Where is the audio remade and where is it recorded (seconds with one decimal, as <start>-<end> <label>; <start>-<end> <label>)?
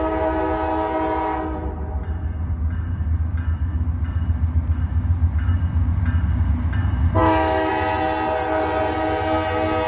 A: 0.0-7.2 recorded; 7.2-7.7 remade; 7.7-9.9 recorded